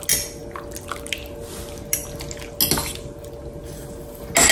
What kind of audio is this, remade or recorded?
recorded